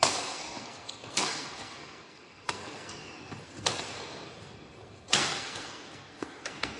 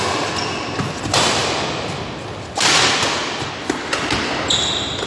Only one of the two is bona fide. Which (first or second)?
second